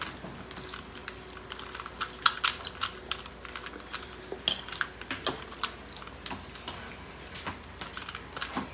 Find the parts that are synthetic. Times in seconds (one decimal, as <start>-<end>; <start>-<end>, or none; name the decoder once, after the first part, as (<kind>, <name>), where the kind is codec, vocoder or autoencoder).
none